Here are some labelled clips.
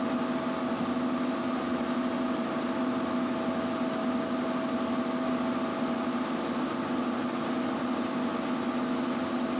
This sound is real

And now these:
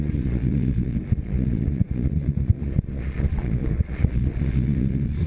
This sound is fake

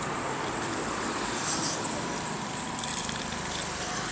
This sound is real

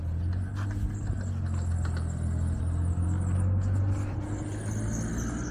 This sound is real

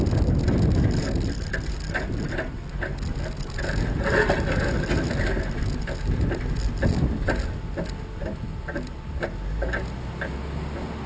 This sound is real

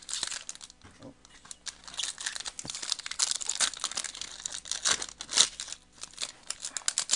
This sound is real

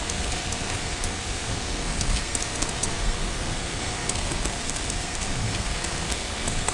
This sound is fake